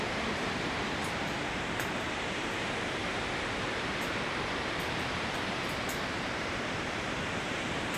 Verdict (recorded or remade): remade